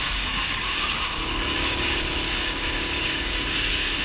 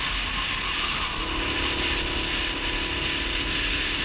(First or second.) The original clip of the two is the second